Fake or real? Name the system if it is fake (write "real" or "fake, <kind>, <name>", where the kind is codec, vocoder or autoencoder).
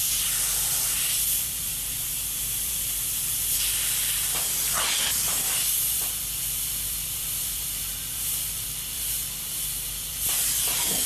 fake, vocoder, BigVGAN v2